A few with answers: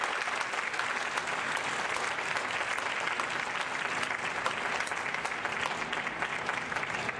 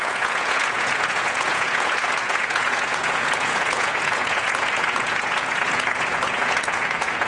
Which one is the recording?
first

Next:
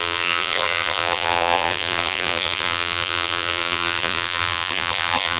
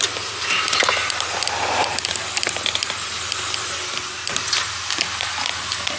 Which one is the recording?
second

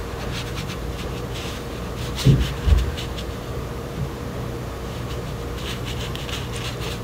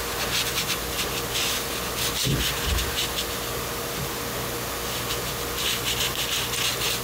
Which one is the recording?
second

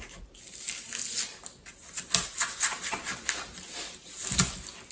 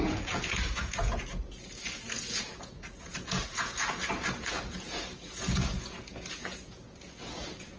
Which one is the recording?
first